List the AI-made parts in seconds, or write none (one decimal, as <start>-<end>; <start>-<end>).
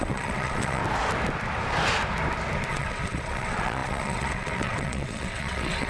0.0-0.8; 2.7-5.9